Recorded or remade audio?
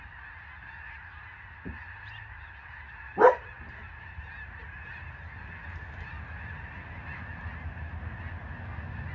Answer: recorded